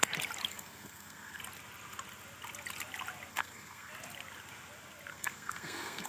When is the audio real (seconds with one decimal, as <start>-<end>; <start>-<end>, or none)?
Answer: 0.0-0.5; 1.4-3.3; 3.9-5.1